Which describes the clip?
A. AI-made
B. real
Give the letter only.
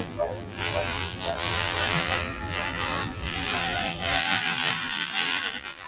A